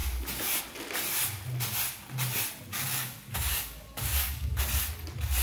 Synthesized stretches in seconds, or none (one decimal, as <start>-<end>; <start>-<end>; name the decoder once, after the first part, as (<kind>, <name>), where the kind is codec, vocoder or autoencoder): 2.7-4.6 (codec, DAC)